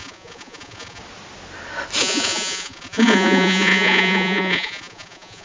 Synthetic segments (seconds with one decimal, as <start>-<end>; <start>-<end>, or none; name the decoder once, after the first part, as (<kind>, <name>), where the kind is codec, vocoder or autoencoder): 0.0-1.0 (vocoder, Vocos); 2.0-5.4